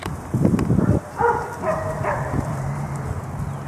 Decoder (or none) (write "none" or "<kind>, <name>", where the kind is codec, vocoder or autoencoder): vocoder, BigVGAN v2